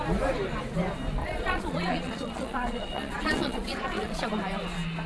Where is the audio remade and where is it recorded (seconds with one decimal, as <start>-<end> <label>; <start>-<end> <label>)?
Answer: 0.0-1.2 recorded; 1.2-4.3 remade; 4.3-5.1 recorded